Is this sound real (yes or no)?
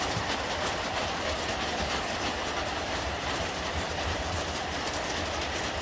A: no